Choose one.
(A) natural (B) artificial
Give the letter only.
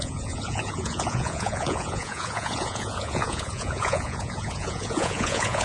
B